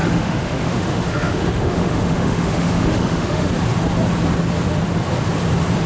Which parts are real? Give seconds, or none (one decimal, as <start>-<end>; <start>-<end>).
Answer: 3.5-5.9

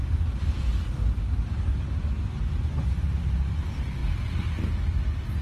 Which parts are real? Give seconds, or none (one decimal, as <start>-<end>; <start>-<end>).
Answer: 0.0-5.4